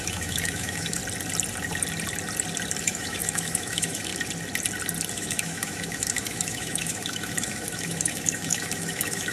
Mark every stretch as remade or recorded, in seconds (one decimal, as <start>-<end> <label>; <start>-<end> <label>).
0.0-1.0 remade; 1.0-2.8 recorded; 2.8-4.1 remade; 4.1-5.1 recorded; 5.1-9.3 remade